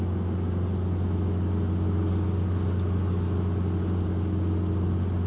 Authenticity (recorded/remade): recorded